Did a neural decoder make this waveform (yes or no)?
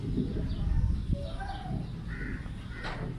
no